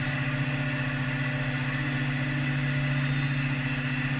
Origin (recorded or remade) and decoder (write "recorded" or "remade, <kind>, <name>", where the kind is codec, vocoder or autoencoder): recorded